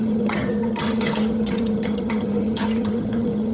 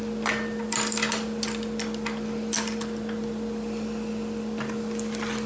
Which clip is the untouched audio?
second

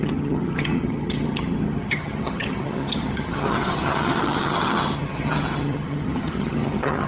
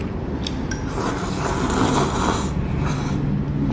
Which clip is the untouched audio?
second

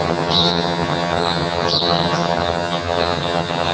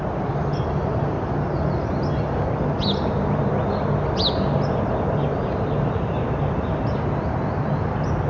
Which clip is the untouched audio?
second